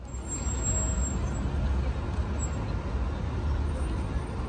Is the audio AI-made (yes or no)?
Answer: no